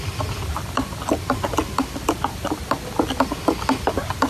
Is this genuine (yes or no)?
yes